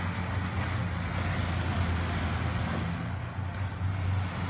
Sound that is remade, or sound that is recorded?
recorded